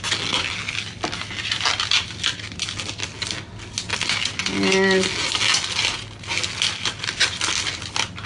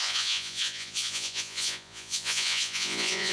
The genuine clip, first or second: first